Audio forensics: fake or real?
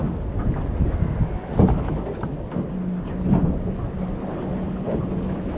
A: real